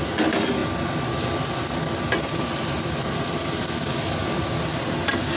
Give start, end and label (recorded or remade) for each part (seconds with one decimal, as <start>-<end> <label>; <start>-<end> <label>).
0.0-5.4 recorded